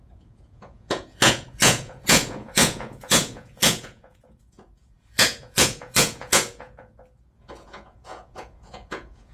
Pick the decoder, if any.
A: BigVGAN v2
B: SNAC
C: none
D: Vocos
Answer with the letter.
D